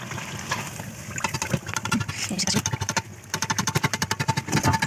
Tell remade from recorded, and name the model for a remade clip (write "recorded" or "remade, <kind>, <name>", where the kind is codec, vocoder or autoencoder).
remade, vocoder, BigVGAN v2